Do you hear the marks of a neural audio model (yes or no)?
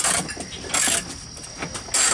no